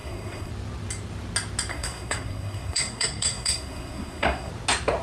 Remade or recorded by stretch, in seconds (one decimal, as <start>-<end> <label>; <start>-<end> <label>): 0.0-0.5 remade; 0.5-1.7 recorded; 1.7-4.5 remade; 4.5-5.0 recorded